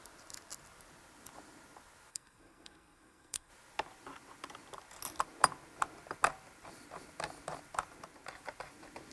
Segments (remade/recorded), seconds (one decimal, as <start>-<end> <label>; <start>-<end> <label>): 0.0-2.1 recorded; 2.1-3.5 remade; 3.5-9.1 recorded